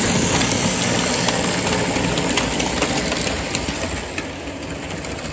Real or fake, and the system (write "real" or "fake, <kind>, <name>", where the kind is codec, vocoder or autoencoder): real